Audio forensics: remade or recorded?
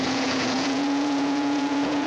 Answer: remade